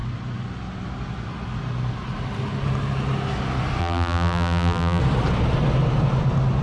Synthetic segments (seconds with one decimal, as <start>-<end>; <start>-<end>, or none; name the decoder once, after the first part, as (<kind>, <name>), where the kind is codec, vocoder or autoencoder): 3.8-5.0 (vocoder, BigVGAN v2)